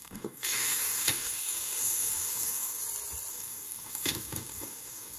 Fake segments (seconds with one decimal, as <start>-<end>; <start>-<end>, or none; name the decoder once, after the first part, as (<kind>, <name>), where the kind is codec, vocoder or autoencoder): 0.0-2.8 (codec, DAC); 3.3-5.2